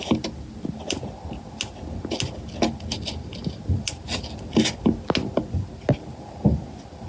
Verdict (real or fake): real